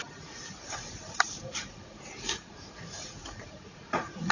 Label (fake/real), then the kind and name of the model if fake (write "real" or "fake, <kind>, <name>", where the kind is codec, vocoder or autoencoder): fake, vocoder, Vocos